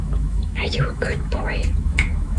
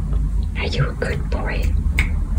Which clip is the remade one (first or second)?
first